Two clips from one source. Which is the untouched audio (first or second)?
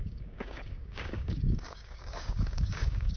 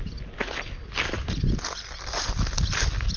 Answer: second